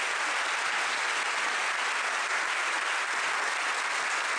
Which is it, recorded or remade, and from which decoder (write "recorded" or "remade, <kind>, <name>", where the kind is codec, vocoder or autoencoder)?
recorded